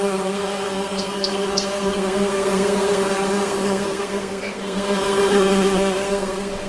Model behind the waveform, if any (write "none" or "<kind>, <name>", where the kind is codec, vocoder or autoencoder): codec, SNAC